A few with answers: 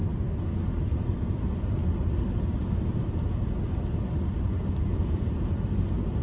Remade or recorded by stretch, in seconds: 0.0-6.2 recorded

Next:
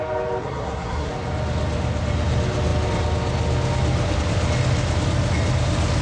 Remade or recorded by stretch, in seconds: 0.0-0.4 recorded; 0.4-1.1 remade; 1.1-6.0 recorded

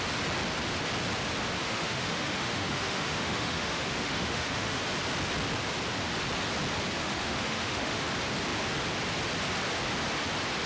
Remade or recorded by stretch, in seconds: 0.0-1.6 recorded; 1.6-4.8 remade; 4.8-7.0 recorded; 7.0-8.0 remade; 8.0-10.7 recorded

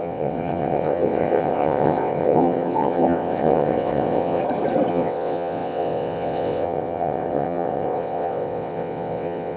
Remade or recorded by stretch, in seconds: 0.0-4.4 remade; 4.4-4.9 recorded; 4.9-9.6 remade

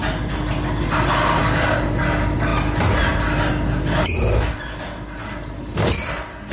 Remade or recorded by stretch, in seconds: 0.0-6.5 recorded

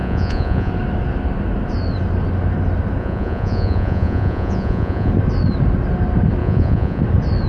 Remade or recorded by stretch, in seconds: 0.0-0.7 remade; 0.7-3.0 recorded; 3.0-5.1 remade; 5.1-6.4 recorded; 6.4-7.0 remade; 7.0-7.5 recorded

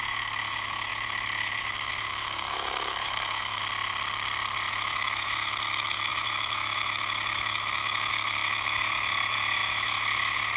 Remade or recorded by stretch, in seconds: 0.0-3.6 remade; 3.6-4.7 recorded; 4.7-10.6 remade

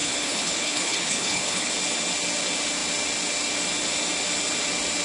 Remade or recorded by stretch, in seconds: 0.0-1.7 remade; 1.7-5.0 recorded